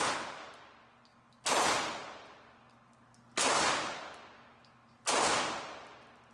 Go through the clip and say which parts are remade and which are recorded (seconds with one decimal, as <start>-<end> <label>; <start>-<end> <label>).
0.0-6.3 recorded